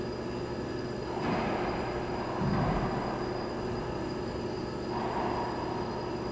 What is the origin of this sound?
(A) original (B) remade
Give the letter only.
A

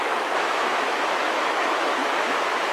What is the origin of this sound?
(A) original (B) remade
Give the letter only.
B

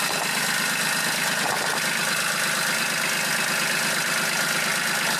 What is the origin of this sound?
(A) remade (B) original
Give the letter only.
B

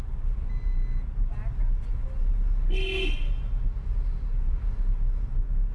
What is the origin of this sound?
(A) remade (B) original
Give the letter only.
B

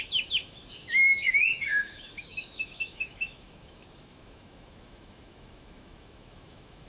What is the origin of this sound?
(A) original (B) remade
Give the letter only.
B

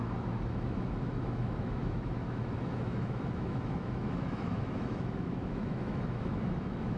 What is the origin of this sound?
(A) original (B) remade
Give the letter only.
B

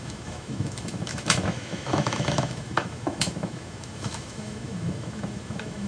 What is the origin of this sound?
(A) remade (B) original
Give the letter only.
A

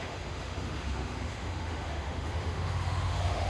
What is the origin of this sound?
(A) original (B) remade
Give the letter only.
B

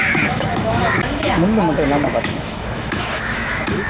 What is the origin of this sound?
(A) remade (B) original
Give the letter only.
A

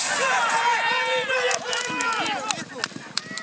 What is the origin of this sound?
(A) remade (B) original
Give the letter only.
B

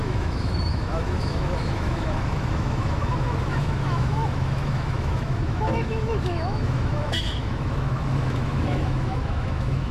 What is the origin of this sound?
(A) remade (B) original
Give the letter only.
A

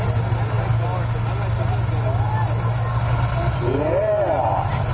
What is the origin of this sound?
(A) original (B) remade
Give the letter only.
A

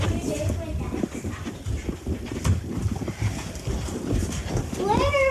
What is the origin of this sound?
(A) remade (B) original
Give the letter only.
B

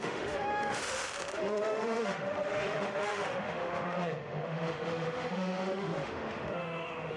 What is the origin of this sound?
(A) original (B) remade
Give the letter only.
B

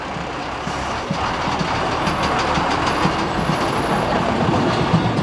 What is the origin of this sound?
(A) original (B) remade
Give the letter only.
A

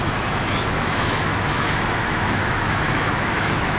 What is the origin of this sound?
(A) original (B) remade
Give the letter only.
B